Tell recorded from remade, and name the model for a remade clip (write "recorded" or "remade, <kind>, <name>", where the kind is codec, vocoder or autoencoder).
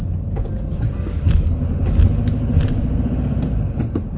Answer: recorded